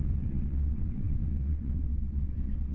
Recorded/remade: remade